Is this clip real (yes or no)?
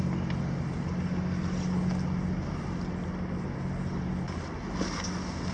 yes